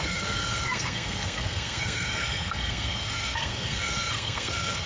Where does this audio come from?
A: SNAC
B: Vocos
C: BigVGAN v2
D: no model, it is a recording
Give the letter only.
A